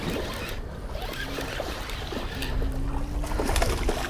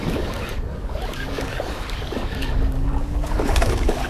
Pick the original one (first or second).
first